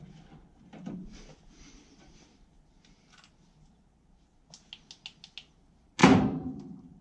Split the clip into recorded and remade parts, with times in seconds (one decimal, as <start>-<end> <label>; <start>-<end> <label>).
0.0-6.0 recorded; 6.0-7.0 remade

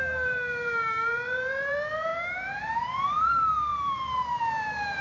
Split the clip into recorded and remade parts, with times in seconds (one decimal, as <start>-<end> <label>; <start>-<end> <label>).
0.0-5.0 remade

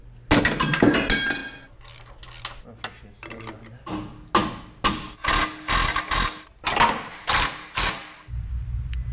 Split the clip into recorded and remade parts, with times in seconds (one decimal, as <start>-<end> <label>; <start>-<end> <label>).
0.0-9.1 recorded

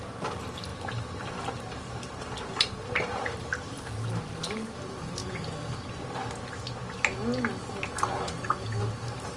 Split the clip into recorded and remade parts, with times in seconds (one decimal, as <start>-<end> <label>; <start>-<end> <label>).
0.0-5.2 remade; 5.2-8.8 recorded; 8.8-9.4 remade

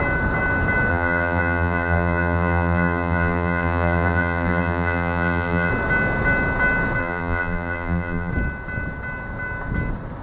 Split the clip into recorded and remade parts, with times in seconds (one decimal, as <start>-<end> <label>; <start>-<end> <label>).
0.0-0.9 recorded; 0.9-5.7 remade; 5.7-7.0 recorded; 7.0-8.3 remade; 8.3-10.2 recorded

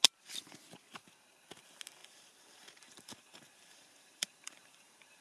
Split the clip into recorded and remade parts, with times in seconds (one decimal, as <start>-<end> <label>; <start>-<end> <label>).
0.0-2.0 recorded; 2.0-5.2 remade

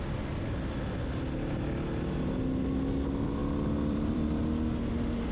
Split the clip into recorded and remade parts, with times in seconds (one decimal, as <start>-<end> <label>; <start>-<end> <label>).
0.0-3.4 recorded; 3.4-4.4 remade; 4.4-5.3 recorded

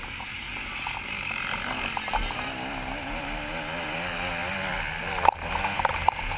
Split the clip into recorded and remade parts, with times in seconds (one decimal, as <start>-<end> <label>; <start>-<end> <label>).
0.0-6.4 recorded